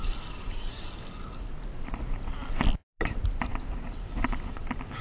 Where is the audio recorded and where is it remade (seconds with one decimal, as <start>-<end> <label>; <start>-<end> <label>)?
0.0-5.0 recorded